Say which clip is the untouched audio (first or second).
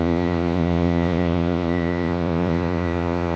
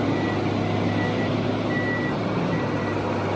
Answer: second